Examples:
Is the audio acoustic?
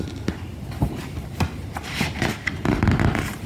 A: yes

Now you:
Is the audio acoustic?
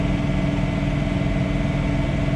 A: yes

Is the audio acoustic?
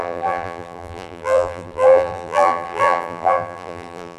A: no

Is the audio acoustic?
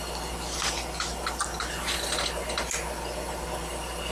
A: yes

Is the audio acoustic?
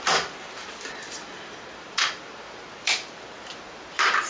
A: no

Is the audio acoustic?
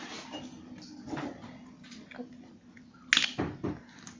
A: yes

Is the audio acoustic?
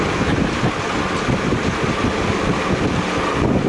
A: yes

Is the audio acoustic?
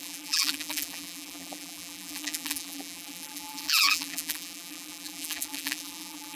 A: no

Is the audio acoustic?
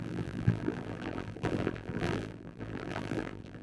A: no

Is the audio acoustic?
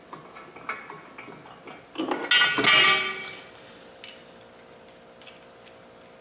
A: yes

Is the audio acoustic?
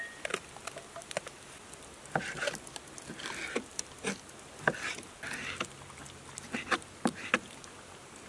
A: yes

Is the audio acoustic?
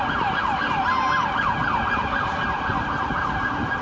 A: yes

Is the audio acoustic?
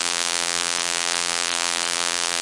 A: no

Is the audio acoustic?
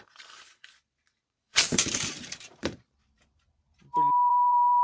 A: no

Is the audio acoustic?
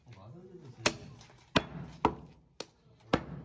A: yes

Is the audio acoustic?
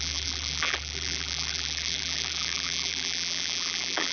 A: no